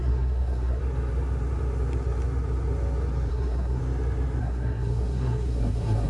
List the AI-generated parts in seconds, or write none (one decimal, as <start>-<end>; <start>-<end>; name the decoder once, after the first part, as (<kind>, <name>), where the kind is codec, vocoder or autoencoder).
0.0-0.8 (codec, SNAC); 3.3-3.8; 4.4-6.1